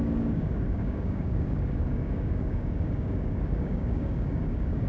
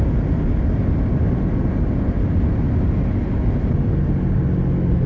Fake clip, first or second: first